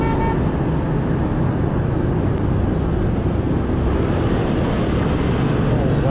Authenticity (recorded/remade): recorded